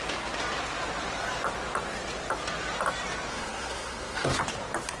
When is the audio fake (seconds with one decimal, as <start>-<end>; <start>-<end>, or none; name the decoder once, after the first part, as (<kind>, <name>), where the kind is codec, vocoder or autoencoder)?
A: 3.3-4.4 (codec, SNAC)